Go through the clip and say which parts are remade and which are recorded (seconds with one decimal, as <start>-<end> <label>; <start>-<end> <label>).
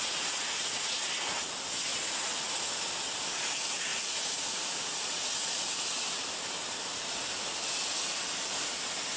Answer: 0.0-1.0 remade; 1.0-1.9 recorded; 1.9-2.7 remade; 2.7-3.9 recorded; 3.9-5.8 remade; 5.8-9.2 recorded